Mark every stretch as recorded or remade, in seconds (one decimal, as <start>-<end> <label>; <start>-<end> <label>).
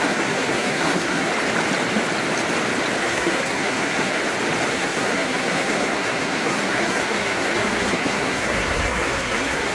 0.0-1.3 remade; 1.3-3.0 recorded; 3.0-4.2 remade; 4.2-4.7 recorded; 4.7-9.7 remade